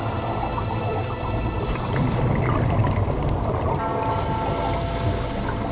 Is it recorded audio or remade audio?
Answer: recorded